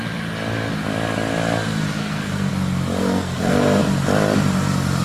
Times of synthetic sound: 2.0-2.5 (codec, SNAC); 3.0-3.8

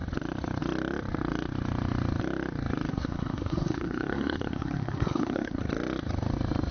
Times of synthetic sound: 2.9-5.6 (codec, SNAC)

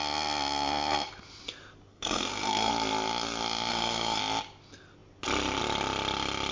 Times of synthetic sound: 1.9-2.7 (codec, SNAC); 3.7-4.2

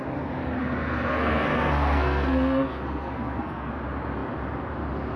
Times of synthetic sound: 0.6-3.7 (codec, SNAC)

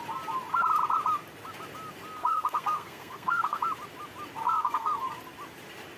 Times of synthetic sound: 2.2-3.6 (codec, SNAC); 4.4-5.0

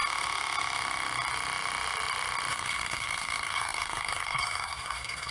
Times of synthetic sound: 2.5-5.3 (codec, SNAC)

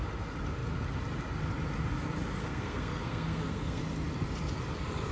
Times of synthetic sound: 2.4-3.8 (codec, SNAC)